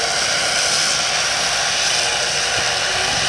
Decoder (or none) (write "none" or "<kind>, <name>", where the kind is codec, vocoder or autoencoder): none